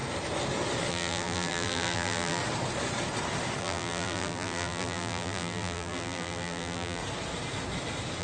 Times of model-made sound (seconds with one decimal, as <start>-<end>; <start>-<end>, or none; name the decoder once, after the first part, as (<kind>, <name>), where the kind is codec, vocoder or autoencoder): 0.9-2.4 (vocoder, BigVGAN v2); 3.6-7.0